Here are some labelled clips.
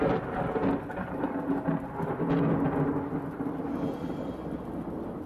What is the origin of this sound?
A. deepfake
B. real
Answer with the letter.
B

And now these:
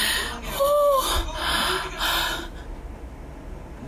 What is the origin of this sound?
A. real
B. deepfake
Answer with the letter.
A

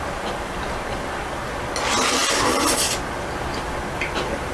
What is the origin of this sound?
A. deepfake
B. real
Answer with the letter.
B